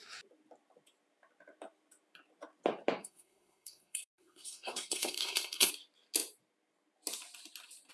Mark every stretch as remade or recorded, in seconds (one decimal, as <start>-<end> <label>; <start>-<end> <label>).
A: 0.0-3.0 recorded; 3.0-5.7 remade; 5.7-7.9 recorded